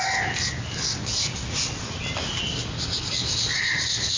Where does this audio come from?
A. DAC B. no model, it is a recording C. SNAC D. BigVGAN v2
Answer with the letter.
B